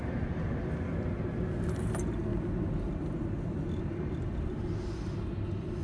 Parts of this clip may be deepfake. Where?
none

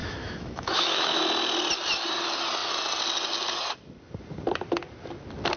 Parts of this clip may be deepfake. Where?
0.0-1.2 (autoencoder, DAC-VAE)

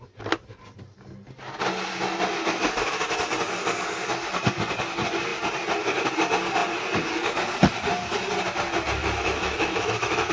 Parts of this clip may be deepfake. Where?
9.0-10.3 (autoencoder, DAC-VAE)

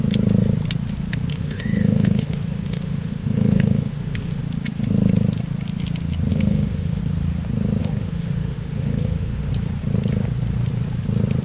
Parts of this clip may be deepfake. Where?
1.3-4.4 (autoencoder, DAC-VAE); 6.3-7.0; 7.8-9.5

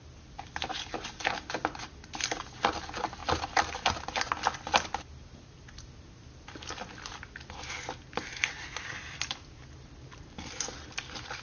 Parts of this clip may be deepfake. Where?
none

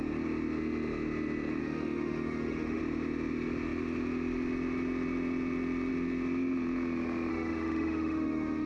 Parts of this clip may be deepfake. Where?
1.6-2.8 (autoencoder, DAC-VAE); 7.3-8.7

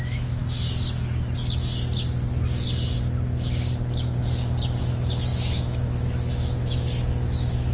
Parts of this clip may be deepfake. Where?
0.0-0.4 (autoencoder, DAC-VAE); 4.8-7.7